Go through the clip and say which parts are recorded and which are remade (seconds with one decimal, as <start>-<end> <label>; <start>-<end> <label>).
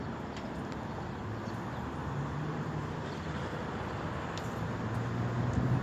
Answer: 0.0-2.0 recorded; 2.0-3.9 remade; 3.9-5.8 recorded